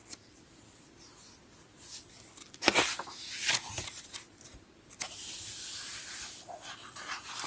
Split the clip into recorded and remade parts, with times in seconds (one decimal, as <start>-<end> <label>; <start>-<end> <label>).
0.0-7.5 recorded